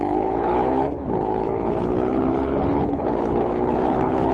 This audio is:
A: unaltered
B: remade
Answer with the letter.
B